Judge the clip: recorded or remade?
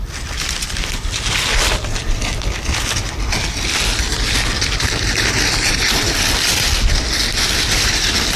recorded